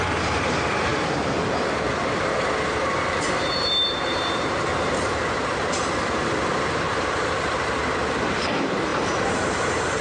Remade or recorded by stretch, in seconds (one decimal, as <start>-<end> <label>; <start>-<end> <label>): 0.0-0.9 remade; 0.9-2.7 recorded; 2.7-10.0 remade